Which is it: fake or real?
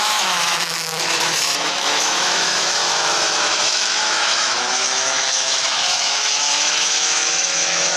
fake